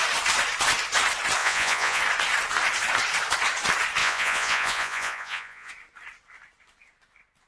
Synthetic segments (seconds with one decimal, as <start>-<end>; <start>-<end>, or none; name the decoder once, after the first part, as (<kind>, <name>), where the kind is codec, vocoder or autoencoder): 1.4-2.0 (vocoder, Vocos); 4.0-5.7